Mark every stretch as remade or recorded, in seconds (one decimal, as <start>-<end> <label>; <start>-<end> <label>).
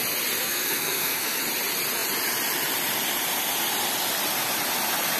0.0-0.4 recorded; 0.4-1.4 remade; 1.4-5.2 recorded